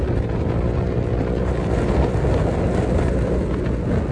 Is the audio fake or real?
real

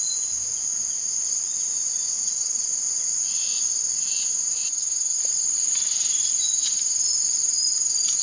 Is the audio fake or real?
real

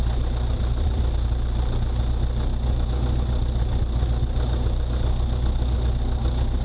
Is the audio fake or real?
real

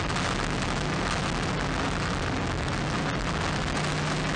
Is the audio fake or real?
real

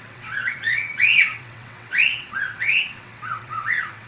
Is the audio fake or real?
fake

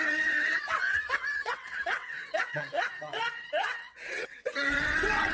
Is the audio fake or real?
fake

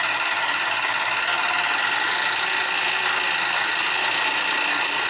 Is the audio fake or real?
real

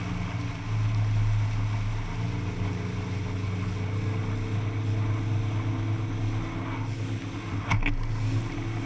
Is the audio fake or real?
real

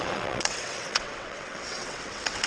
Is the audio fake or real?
fake